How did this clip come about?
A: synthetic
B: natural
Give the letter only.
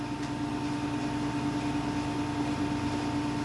B